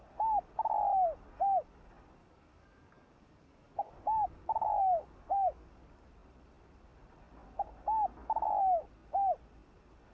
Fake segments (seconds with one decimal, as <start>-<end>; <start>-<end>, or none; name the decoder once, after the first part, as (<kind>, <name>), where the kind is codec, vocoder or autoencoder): 2.2-6.1 (codec, DAC)